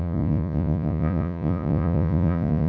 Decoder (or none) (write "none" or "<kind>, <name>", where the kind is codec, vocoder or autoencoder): vocoder, Vocos